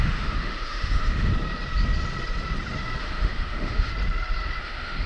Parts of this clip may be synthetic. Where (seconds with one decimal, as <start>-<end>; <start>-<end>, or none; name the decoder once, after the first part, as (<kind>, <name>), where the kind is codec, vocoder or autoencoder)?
0.0-1.3 (autoencoder, DAC-VAE); 3.0-3.9; 4.6-5.1